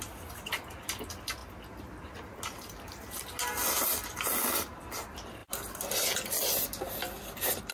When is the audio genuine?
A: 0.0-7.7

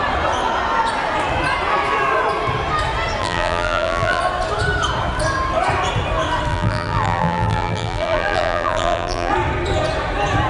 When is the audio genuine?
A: 0.0-3.2; 4.2-6.5; 9.3-10.5

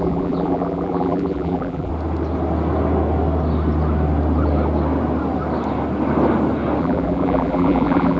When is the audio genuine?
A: 1.9-6.8

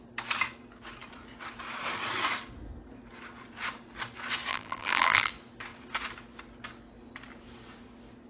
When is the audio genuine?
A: 0.0-4.5; 5.3-8.3

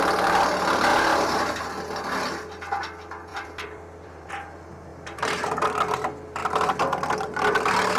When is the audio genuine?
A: 0.0-0.9; 1.5-3.3; 4.3-4.9; 5.5-6.4; 7.1-8.0